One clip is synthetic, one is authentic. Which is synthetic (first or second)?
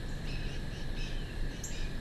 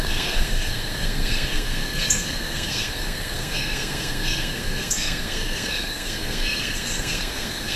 second